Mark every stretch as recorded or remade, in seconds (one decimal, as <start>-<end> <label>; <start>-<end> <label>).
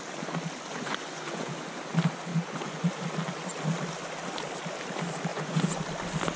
0.0-0.7 recorded; 0.7-1.8 remade; 1.8-2.3 recorded; 2.3-2.9 remade; 2.9-5.3 recorded; 5.3-5.8 remade; 5.8-6.4 recorded